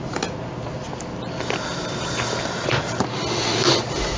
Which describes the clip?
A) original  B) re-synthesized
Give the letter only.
A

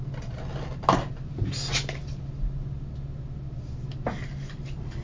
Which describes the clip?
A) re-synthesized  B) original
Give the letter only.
B